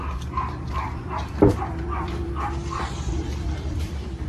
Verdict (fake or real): fake